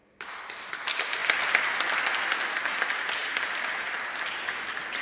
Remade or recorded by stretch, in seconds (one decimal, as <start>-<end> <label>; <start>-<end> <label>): 0.0-0.7 remade; 0.7-1.2 recorded; 1.2-2.7 remade; 2.7-5.0 recorded